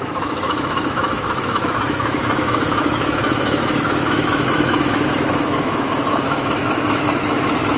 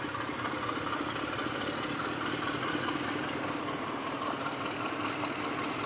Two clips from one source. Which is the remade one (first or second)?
first